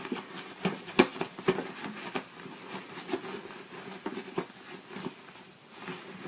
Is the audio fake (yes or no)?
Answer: no